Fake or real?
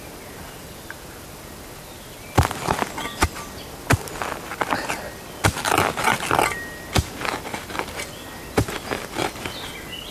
real